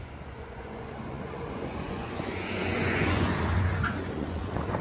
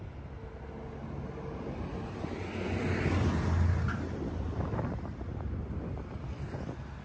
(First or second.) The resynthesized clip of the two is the first